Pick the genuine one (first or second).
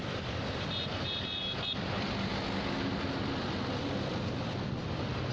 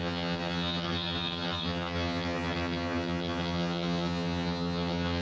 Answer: first